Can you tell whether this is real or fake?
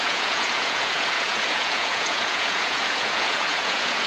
fake